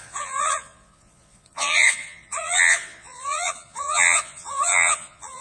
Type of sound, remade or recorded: remade